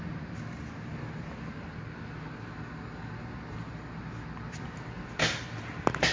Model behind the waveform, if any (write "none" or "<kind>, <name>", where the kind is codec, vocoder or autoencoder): none